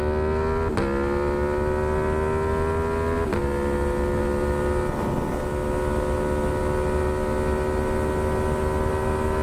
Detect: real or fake real